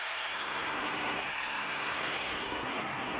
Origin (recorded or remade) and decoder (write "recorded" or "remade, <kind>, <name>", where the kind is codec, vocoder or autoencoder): remade, codec, SNAC